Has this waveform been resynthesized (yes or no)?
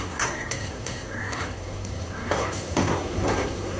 yes